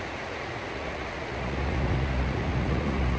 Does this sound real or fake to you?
fake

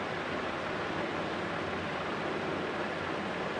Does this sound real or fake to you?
real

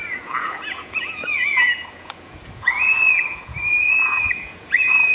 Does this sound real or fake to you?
fake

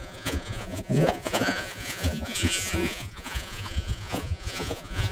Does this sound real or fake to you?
fake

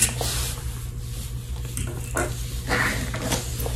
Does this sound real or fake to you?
real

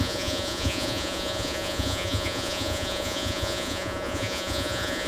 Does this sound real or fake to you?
fake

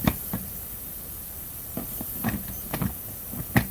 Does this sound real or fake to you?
real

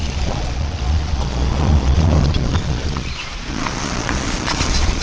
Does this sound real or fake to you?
fake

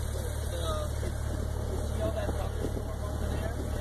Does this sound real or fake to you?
real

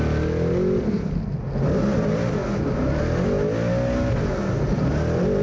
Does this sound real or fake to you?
real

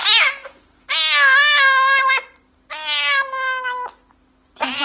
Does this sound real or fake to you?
real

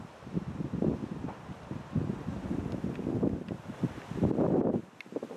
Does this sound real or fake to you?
real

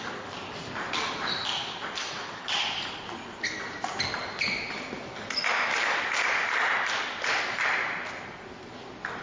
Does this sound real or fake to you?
real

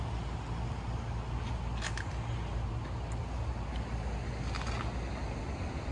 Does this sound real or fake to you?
real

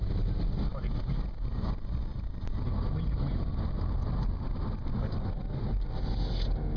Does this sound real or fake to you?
real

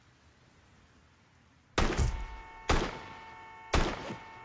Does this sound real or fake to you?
real